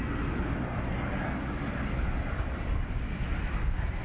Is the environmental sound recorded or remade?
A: recorded